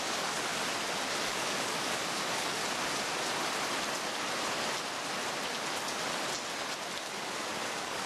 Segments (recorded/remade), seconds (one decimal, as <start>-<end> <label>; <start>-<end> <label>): 0.0-0.5 remade; 0.5-1.2 recorded; 1.2-2.6 remade; 2.6-7.1 recorded; 7.1-8.1 remade